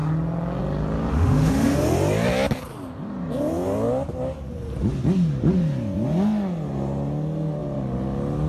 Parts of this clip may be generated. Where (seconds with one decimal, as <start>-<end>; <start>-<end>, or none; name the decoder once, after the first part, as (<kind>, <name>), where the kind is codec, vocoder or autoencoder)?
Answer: 1.1-1.8 (autoencoder, DAC-VAE)